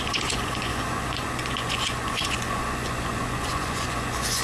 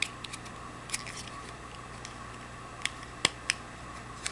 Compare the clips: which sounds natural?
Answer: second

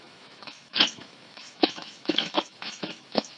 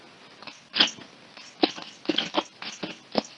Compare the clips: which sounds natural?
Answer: second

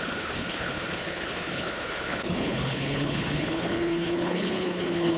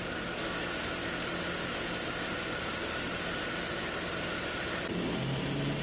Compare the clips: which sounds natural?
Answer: second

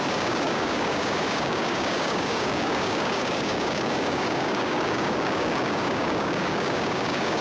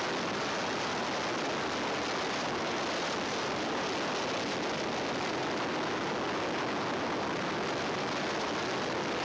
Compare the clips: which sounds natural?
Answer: second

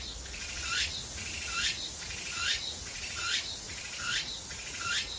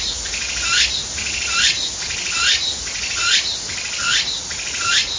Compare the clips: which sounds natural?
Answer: second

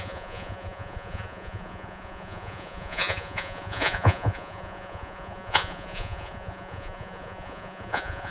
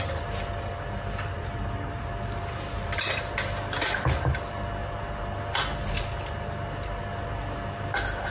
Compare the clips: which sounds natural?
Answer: second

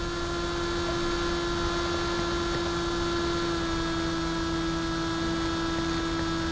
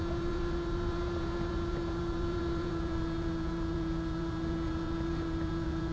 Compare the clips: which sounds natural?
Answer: first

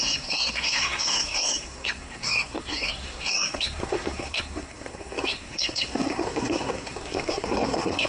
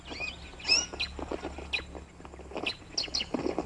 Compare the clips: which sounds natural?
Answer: second